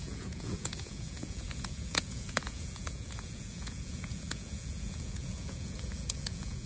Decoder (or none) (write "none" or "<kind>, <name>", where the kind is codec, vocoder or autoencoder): vocoder, Vocos